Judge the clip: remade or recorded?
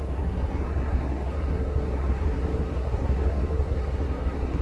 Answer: remade